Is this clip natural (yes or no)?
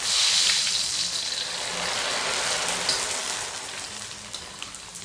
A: yes